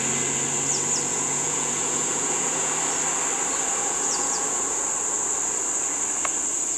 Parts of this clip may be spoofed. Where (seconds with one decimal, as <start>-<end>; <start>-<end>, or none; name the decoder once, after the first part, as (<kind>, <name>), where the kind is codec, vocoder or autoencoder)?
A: 1.1-2.7 (vocoder, Vocos); 3.7-4.8